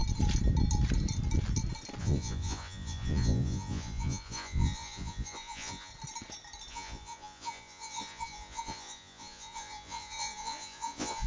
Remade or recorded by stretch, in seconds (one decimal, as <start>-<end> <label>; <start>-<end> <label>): 0.0-2.0 recorded; 2.0-5.9 remade; 5.9-6.7 recorded; 6.7-11.3 remade